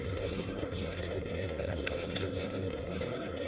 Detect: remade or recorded remade